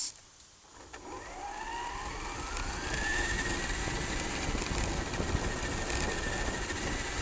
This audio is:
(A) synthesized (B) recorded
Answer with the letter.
B